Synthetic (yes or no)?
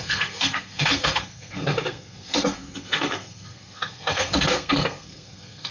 yes